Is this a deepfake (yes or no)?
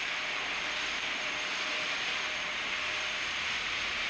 yes